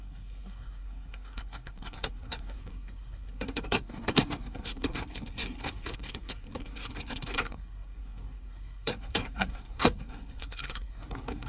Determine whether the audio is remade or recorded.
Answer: remade